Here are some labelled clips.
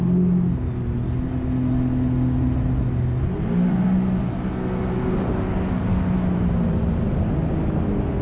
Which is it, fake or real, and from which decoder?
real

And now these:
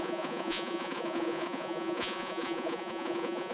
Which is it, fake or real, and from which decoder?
fake, vocoder, Vocos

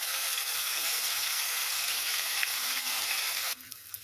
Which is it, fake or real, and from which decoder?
fake, codec, SNAC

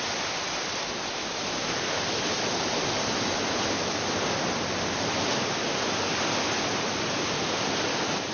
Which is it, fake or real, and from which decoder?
real